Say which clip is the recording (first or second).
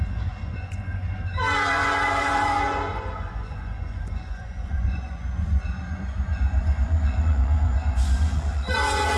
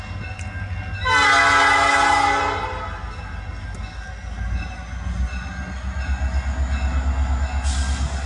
second